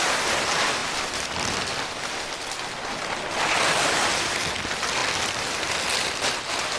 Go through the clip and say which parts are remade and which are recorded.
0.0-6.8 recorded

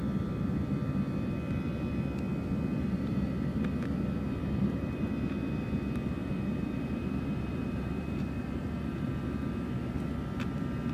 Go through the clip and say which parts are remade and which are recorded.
0.0-2.7 recorded; 2.7-3.3 remade; 3.3-4.4 recorded; 4.4-5.0 remade; 5.0-6.2 recorded; 6.2-9.1 remade; 9.1-10.9 recorded

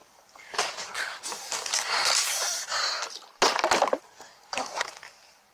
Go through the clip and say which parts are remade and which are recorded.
0.0-2.8 remade; 2.8-4.0 recorded; 4.0-5.5 remade

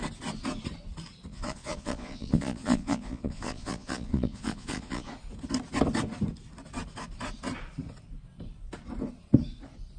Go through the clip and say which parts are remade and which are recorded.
0.0-1.3 recorded; 1.3-5.1 remade; 5.1-10.0 recorded

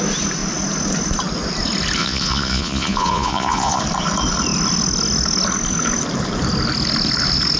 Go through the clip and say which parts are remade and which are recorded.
0.0-2.0 recorded; 2.0-3.8 remade; 3.8-7.6 recorded

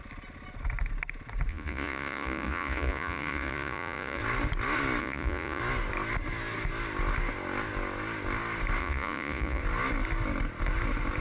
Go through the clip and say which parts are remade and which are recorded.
0.0-1.5 recorded; 1.5-4.2 remade; 4.2-5.0 recorded; 5.0-5.6 remade; 5.6-8.8 recorded; 8.8-9.6 remade; 9.6-11.2 recorded

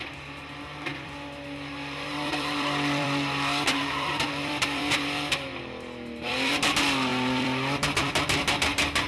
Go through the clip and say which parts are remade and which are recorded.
0.0-9.1 remade

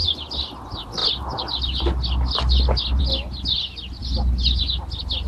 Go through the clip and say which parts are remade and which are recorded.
0.0-0.6 remade; 0.6-5.3 recorded